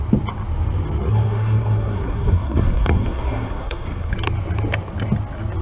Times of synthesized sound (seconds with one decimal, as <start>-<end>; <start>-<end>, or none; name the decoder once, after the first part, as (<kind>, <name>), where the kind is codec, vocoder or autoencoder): 1.0-4.1 (codec, SNAC)